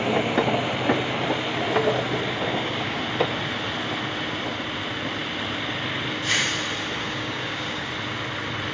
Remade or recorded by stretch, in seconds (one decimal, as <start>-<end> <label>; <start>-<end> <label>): 0.0-2.5 recorded; 2.5-3.0 remade; 3.0-7.0 recorded; 7.0-7.9 remade; 7.9-8.7 recorded